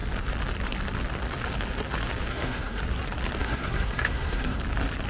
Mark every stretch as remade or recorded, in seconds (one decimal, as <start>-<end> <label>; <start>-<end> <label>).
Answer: 0.0-2.3 recorded; 2.3-2.8 remade; 2.8-3.4 recorded; 3.4-4.6 remade; 4.6-5.1 recorded